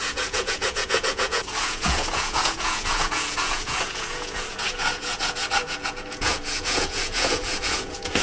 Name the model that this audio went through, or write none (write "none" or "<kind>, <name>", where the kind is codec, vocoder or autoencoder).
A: vocoder, Vocos